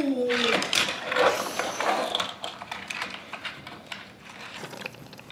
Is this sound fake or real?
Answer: fake